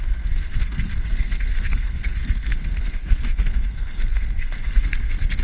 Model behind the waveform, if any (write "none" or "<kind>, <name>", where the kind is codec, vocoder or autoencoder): codec, SNAC